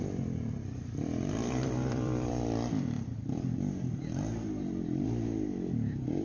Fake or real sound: fake